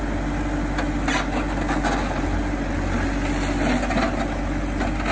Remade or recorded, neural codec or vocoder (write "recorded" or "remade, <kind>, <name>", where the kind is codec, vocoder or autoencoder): recorded